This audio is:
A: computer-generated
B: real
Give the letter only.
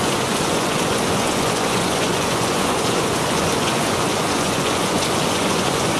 A